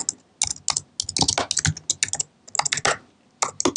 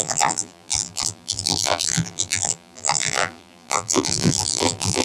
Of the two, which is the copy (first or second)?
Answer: second